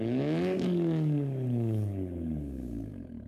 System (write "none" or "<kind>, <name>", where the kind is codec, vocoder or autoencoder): codec, DAC